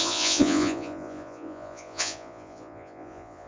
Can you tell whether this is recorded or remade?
remade